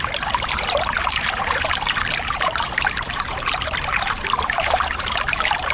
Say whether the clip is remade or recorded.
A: remade